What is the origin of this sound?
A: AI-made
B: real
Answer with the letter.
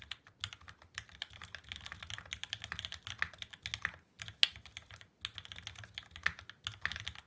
B